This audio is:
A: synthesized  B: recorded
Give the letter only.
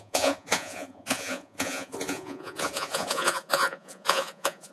A